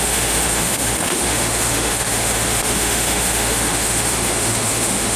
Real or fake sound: fake